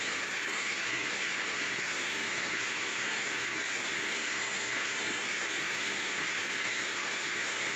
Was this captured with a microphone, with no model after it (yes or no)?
no